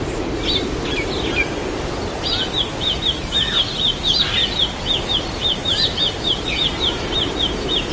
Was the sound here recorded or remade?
recorded